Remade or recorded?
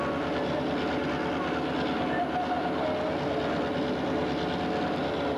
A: recorded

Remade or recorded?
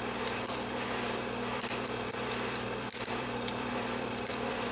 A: remade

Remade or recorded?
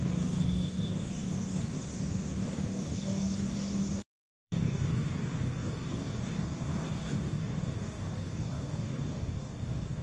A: remade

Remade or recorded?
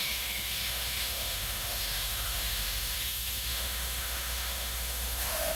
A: remade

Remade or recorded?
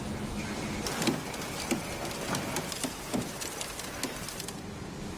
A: recorded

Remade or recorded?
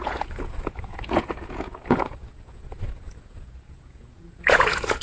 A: remade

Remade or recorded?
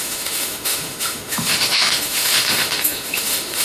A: remade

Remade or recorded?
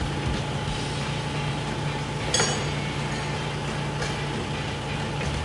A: recorded